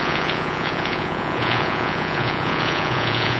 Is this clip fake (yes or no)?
yes